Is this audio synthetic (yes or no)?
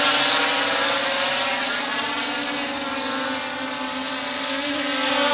no